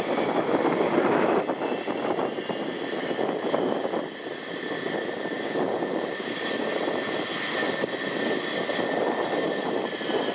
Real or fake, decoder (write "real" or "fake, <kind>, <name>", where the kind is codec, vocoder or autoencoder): real